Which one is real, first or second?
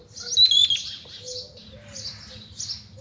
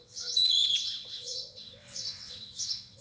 first